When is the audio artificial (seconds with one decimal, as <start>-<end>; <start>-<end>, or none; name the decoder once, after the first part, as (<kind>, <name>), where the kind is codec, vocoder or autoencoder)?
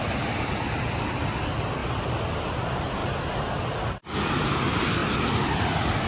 none